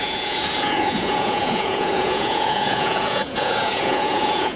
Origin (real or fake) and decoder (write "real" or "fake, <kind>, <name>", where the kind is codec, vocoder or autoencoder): fake, vocoder, Vocos